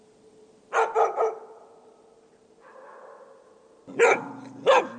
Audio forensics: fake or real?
real